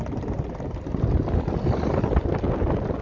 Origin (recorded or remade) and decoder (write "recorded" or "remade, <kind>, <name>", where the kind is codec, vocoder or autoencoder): recorded